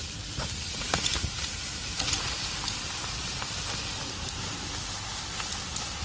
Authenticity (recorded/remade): recorded